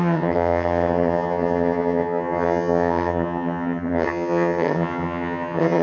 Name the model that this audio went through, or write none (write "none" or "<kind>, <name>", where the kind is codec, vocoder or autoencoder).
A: vocoder, HiFi-GAN